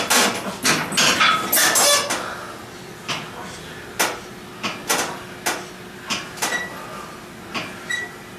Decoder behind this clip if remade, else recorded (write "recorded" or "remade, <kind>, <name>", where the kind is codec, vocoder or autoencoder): recorded